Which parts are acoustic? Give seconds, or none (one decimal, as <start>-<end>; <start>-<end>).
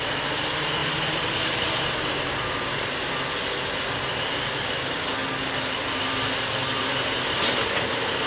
0.0-0.8; 3.3-8.3